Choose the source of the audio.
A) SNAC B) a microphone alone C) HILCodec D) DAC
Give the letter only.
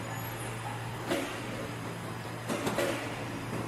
B